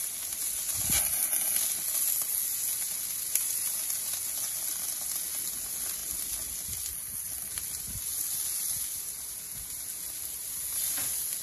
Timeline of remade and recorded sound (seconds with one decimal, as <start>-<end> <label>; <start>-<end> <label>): 0.0-11.4 recorded